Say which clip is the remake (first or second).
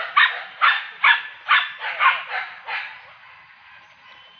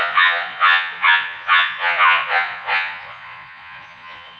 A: second